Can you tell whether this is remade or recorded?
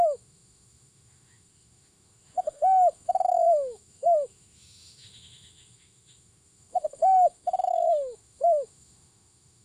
remade